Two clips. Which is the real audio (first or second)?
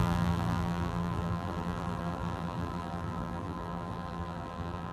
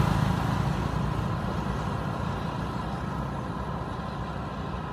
second